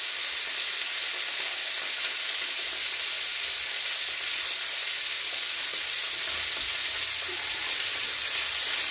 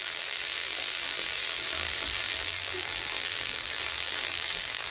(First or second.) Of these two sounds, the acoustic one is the first